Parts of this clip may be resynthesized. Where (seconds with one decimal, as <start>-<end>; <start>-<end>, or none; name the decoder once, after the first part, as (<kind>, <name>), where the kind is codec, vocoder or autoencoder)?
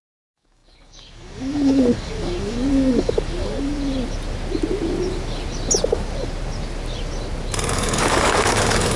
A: 0.0-3.7 (codec, DAC); 7.7-9.0